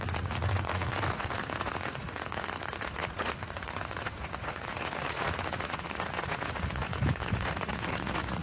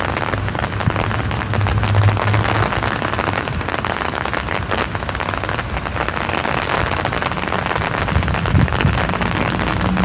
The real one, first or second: second